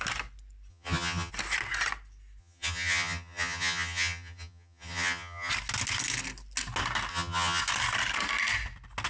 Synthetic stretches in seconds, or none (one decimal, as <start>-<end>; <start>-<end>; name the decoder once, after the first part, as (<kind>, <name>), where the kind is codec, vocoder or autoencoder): 0.7-1.3 (vocoder, HiFi-GAN); 2.4-5.5; 7.1-7.6